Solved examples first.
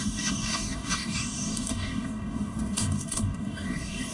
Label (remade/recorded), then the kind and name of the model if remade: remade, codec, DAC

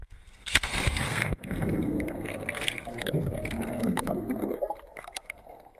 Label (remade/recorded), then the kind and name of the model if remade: remade, codec, SNAC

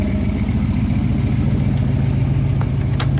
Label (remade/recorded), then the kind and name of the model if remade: recorded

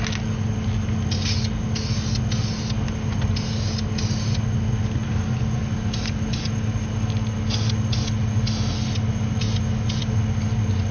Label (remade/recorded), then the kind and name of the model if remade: recorded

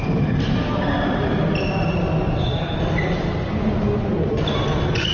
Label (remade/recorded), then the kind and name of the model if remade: recorded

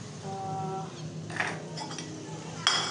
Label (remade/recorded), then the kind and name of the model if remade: recorded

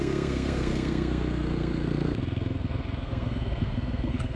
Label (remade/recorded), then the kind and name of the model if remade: remade, codec, SNAC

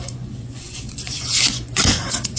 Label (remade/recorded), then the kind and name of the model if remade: remade, vocoder, Vocos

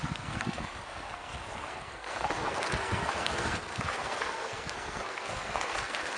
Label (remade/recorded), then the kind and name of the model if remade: remade, codec, SNAC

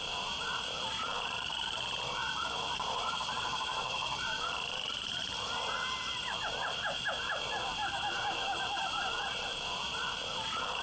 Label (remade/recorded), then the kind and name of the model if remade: remade, vocoder, BigVGAN v2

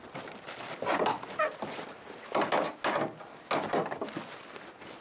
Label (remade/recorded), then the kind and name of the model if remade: recorded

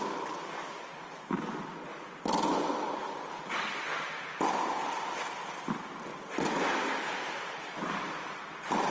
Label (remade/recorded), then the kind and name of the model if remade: remade, vocoder, BigVGAN v2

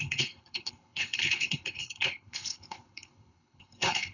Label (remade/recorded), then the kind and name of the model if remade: remade, codec, HILCodec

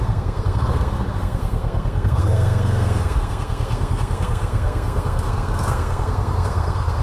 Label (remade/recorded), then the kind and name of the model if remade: remade, codec, SNAC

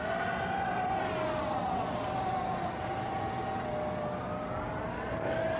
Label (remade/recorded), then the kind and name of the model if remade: recorded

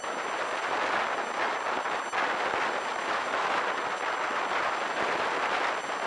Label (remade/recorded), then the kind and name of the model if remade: recorded